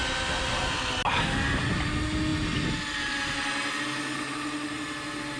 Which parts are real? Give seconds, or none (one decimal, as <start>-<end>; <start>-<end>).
0.0-5.4